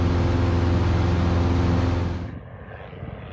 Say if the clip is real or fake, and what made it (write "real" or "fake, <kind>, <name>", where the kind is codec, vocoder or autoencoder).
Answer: real